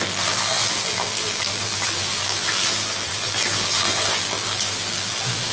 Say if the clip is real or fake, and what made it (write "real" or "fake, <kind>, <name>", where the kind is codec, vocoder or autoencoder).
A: fake, vocoder, BigVGAN v2